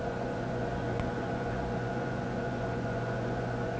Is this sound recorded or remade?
remade